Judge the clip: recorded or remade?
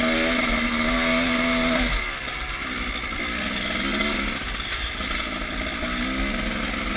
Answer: recorded